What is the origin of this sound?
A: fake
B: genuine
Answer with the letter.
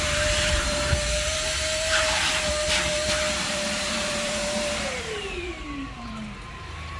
A